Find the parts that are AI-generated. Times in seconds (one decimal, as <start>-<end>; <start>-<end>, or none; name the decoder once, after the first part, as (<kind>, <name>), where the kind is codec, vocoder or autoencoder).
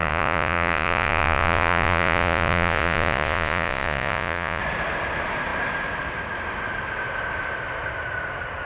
0.0-4.6 (vocoder, Vocos)